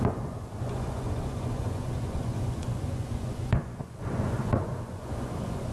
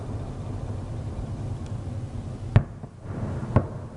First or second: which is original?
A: second